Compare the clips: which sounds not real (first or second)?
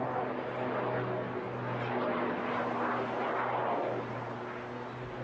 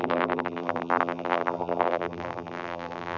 second